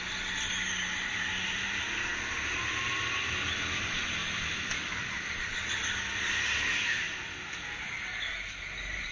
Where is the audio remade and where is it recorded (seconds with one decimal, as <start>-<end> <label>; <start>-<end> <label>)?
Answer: 0.0-9.1 recorded